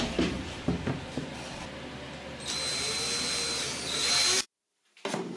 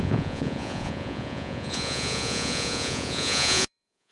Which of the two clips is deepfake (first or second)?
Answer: second